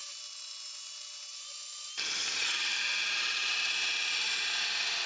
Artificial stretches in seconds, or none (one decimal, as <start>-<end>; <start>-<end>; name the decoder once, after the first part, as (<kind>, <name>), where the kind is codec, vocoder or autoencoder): 1.3-1.9 (vocoder, Vocos)